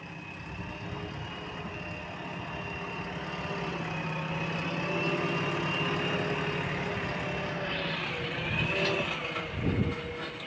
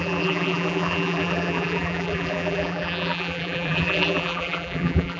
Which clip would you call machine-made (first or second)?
second